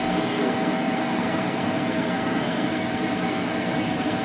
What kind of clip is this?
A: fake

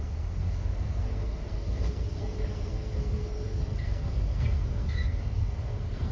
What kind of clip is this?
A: fake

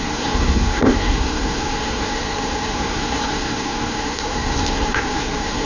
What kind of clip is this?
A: fake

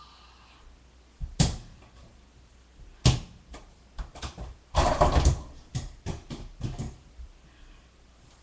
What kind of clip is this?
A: real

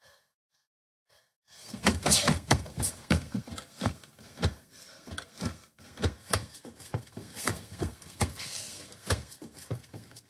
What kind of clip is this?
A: fake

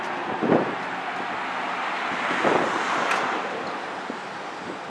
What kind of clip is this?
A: real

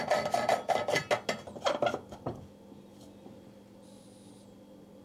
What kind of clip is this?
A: real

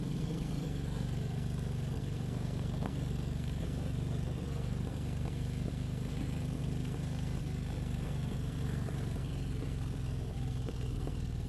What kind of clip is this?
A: fake